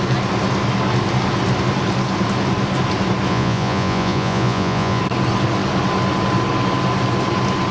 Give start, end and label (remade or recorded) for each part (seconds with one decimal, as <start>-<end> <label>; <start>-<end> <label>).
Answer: 0.0-3.3 recorded; 3.3-5.0 remade; 5.0-7.7 recorded